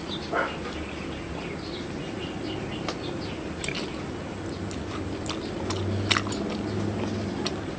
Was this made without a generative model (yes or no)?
yes